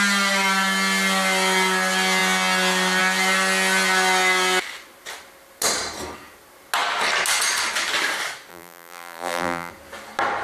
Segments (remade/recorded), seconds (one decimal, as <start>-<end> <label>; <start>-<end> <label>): 0.0-8.5 recorded; 8.5-9.7 remade; 9.7-10.4 recorded

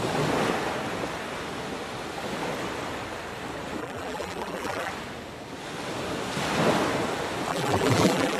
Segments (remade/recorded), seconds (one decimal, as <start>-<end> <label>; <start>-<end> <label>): 0.0-3.8 recorded; 3.8-4.9 remade; 4.9-7.5 recorded; 7.5-8.4 remade